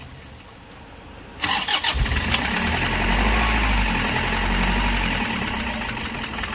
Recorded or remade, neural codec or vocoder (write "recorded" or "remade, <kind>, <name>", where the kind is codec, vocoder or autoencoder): recorded